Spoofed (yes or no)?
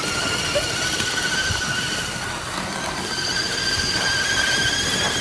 no